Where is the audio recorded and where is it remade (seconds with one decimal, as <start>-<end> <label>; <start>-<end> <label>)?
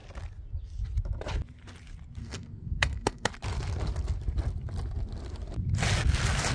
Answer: 0.0-2.2 recorded; 2.2-3.3 remade; 3.3-6.5 recorded